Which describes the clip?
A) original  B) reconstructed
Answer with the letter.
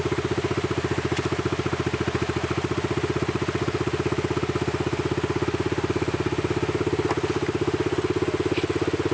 A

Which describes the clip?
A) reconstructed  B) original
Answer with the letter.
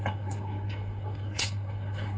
A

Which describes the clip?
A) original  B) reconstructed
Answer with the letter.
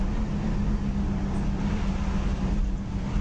A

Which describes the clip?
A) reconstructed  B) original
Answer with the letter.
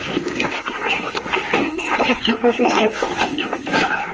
A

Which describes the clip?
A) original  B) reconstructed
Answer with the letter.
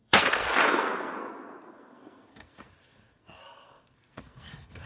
B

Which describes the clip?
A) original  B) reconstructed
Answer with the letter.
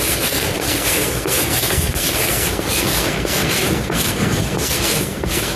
B